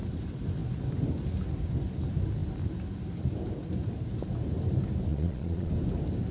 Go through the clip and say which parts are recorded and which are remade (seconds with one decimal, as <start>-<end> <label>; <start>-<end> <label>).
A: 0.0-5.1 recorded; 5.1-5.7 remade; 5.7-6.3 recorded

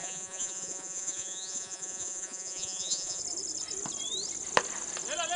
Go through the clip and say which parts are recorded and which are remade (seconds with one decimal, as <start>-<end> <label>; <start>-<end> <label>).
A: 0.0-3.2 remade; 3.2-5.4 recorded

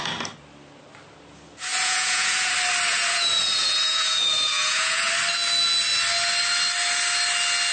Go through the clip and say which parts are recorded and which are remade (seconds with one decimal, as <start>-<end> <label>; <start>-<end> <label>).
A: 0.0-1.7 recorded; 1.7-2.5 remade; 2.5-2.9 recorded; 2.9-5.1 remade; 5.1-7.7 recorded

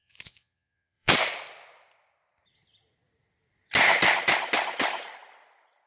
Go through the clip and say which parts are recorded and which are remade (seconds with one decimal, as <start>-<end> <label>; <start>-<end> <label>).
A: 0.0-1.1 remade; 1.1-5.9 recorded